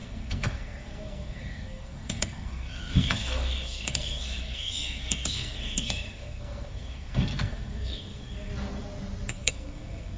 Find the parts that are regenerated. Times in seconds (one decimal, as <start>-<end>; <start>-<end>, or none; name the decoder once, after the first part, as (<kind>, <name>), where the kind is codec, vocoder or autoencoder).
0.0-8.5 (codec, SNAC); 9.3-10.2